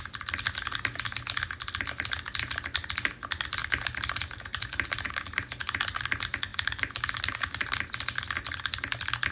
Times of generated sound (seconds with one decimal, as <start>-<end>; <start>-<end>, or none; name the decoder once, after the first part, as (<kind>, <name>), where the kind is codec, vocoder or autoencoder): 3.6-5.6 (vocoder, BigVGAN v2); 6.5-7.8